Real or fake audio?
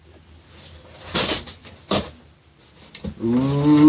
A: real